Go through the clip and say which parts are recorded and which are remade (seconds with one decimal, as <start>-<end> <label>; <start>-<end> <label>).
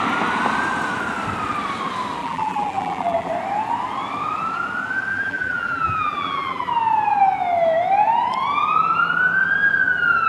0.0-2.2 recorded; 2.2-3.3 remade; 3.3-5.1 recorded; 5.1-6.7 remade; 6.7-10.3 recorded